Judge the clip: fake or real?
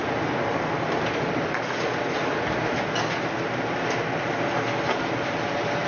real